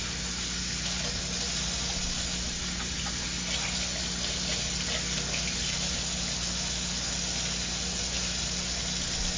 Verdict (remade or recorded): recorded